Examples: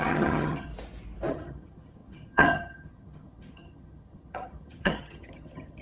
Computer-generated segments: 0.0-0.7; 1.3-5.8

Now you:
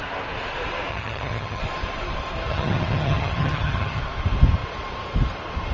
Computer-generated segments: 0.9-1.6; 2.5-4.0

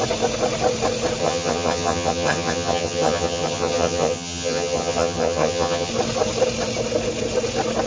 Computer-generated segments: 1.2-5.9

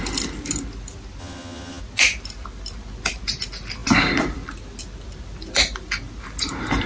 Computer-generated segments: 1.2-1.8

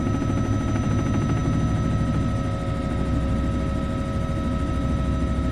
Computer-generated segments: none

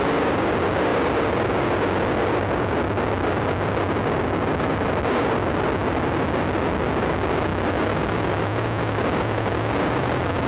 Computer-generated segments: none